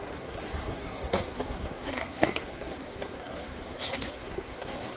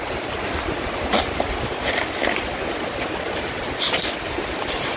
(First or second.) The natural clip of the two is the second